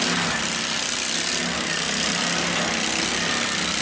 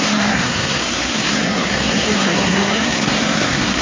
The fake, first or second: second